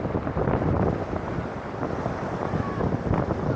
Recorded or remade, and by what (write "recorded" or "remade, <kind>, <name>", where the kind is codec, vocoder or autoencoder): recorded